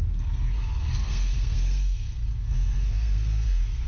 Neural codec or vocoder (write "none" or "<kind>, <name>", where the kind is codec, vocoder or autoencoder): codec, SNAC